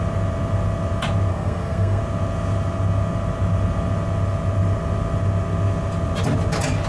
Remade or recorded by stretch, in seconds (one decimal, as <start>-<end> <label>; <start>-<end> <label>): 0.0-1.3 recorded; 1.3-2.0 remade; 2.0-6.9 recorded